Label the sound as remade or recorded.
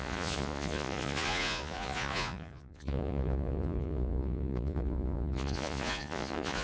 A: remade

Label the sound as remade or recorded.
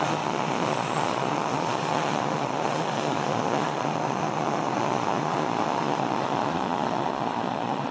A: remade